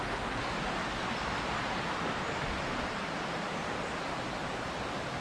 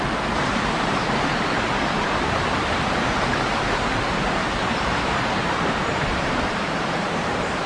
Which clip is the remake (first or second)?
second